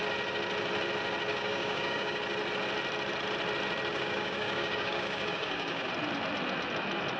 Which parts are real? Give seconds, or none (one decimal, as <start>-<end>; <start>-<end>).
0.0-1.3; 2.2-3.9; 5.9-7.2